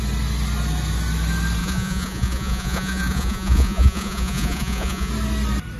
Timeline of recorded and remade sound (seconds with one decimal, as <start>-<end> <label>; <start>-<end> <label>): 0.0-1.6 recorded; 1.6-5.1 remade; 5.1-5.8 recorded